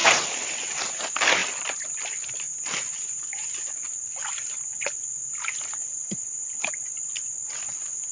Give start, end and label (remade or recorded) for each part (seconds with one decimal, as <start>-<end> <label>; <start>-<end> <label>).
0.0-5.8 recorded; 5.8-6.7 remade; 6.7-8.1 recorded